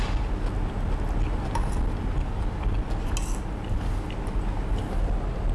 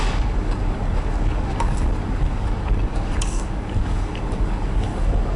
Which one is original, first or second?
first